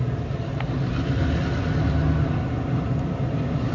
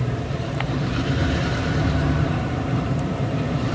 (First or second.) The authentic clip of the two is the first